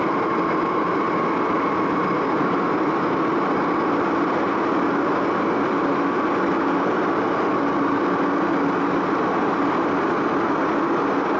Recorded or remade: recorded